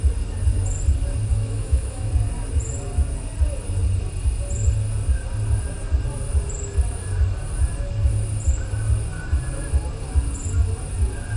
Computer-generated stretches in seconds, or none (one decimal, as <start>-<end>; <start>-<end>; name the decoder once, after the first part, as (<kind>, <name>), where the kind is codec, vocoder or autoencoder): 1.3-2.1 (autoencoder, DAC-VAE)

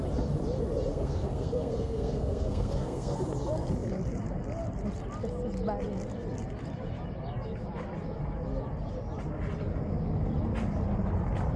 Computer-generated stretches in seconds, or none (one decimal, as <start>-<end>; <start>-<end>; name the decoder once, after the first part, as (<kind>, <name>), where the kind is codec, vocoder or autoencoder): 0.9-3.2 (codec, SNAC)

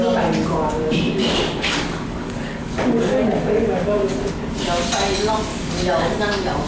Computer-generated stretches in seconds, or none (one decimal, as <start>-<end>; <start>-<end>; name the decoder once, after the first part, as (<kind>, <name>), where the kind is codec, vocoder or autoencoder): 1.2-4.3 (codec, DAC); 5.5-6.2

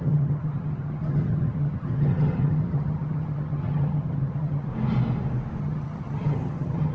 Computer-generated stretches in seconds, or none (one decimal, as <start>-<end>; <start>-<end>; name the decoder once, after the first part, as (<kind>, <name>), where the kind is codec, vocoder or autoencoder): 0.0-4.7 (vocoder, HiFi-GAN); 5.6-6.9